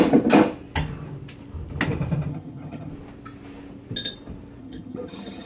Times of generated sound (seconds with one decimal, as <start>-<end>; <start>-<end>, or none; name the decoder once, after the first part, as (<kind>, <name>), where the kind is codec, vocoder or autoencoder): 2.3-2.9 (vocoder, HiFi-GAN); 4.6-5.5